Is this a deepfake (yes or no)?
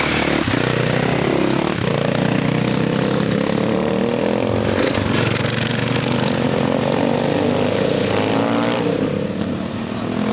no